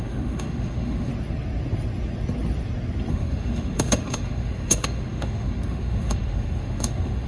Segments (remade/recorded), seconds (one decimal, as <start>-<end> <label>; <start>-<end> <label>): 0.0-1.1 remade; 1.1-3.1 recorded; 3.1-7.3 remade